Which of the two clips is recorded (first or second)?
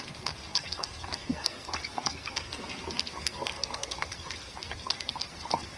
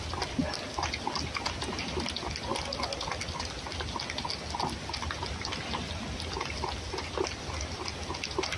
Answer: second